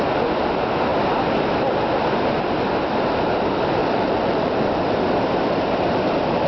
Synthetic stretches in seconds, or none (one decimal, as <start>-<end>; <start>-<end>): 3.8-4.6